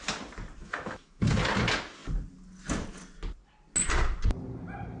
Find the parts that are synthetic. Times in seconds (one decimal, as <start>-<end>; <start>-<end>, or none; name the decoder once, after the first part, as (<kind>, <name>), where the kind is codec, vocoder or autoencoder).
0.6-1.3 (autoencoder, DAC-VAE)